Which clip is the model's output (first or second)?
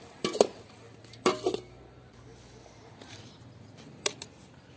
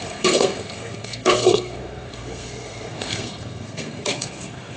second